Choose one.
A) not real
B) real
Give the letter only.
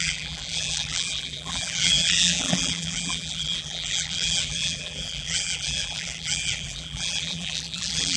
A